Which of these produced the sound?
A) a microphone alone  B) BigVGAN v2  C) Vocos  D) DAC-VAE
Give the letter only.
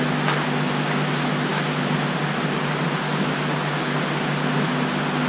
A